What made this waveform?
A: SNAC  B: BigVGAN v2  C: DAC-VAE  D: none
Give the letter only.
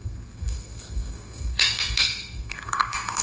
A